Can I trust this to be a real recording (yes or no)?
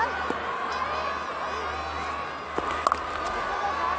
yes